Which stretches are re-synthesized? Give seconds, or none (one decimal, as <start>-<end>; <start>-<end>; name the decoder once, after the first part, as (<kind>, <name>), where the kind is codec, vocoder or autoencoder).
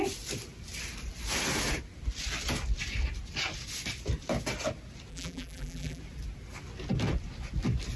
5.1-6.0 (vocoder, BigVGAN v2)